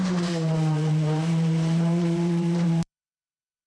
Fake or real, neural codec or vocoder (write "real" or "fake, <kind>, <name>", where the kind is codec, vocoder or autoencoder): fake, vocoder, BigVGAN v2